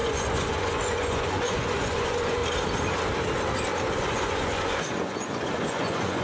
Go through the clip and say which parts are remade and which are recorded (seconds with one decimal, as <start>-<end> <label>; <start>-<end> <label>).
0.0-2.4 remade; 2.4-4.0 recorded; 4.0-6.2 remade